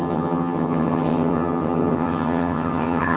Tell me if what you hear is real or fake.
fake